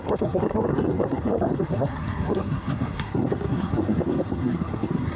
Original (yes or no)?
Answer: no